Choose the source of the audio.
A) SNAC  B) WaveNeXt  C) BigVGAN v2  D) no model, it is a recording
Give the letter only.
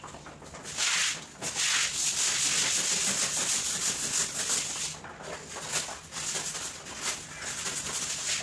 D